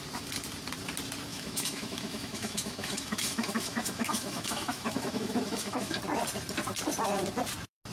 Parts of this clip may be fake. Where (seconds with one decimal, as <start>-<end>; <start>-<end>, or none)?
1.3-6.0